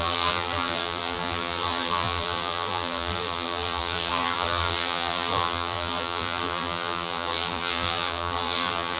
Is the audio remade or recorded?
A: remade